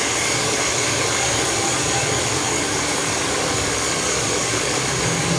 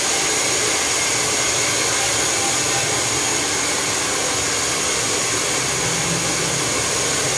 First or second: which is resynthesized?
first